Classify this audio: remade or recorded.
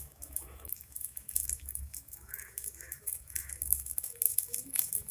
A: remade